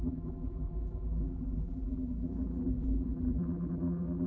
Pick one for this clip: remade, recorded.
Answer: remade